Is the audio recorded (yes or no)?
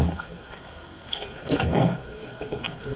no